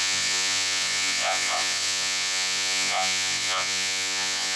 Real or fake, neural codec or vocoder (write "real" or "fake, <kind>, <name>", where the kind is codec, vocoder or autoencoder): fake, vocoder, Vocos